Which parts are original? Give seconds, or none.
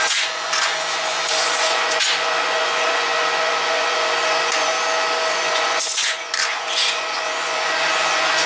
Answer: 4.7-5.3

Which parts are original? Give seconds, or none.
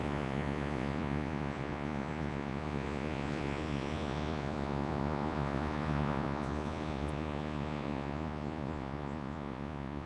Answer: none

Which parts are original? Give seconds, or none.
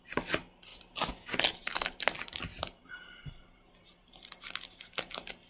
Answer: 0.0-5.5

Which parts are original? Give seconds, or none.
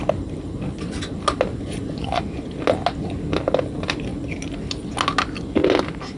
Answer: 0.0-1.5; 2.2-6.2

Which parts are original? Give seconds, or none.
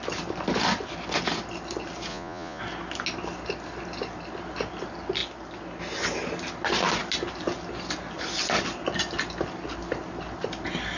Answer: 0.0-2.1; 2.6-11.0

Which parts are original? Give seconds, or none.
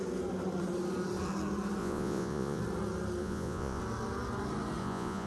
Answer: 0.0-1.8; 2.6-3.2; 3.8-4.8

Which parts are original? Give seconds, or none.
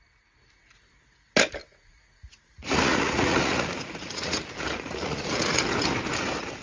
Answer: 0.0-1.6; 5.6-6.6